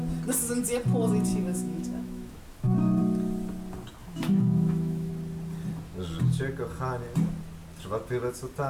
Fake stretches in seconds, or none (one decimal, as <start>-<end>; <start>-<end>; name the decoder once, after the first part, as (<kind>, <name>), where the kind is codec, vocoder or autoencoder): 1.3-3.0 (autoencoder, DAC-VAE); 4.0-5.1